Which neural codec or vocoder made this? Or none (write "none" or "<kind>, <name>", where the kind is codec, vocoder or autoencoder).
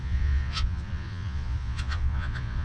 vocoder, Vocos